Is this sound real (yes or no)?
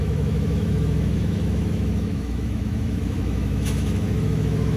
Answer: no